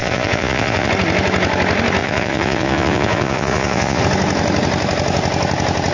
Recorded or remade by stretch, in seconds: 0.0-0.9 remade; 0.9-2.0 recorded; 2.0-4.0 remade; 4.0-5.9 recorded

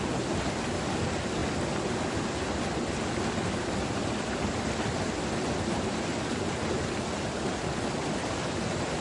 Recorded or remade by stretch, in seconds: 0.0-9.0 recorded

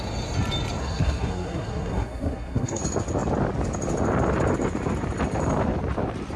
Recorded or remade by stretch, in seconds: 0.0-0.8 recorded; 0.8-2.8 remade; 2.8-6.4 recorded